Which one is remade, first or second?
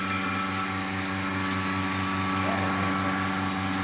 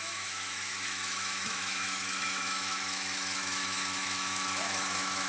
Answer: second